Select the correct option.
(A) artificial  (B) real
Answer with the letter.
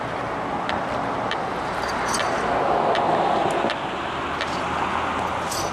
B